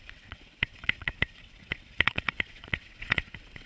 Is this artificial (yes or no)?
yes